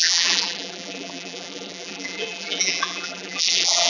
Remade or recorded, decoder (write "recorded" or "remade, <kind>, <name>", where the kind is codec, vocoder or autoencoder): remade, vocoder, BigVGAN v2